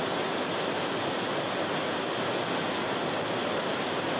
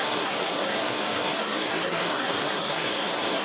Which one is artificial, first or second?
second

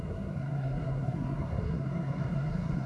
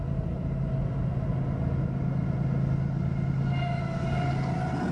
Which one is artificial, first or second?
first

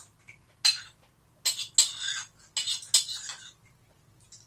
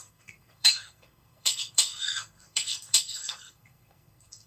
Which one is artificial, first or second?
second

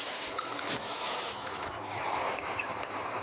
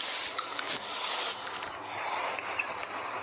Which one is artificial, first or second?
first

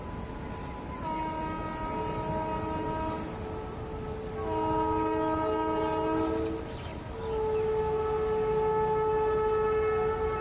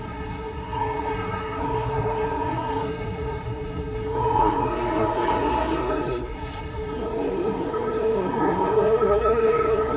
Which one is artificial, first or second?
second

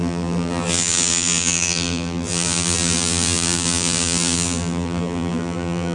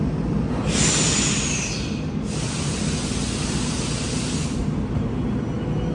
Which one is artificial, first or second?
first